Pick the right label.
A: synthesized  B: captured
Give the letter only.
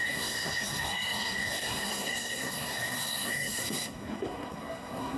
A